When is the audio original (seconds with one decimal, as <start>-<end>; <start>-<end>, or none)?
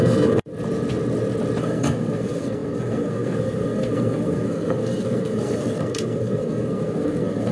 0.5-1.6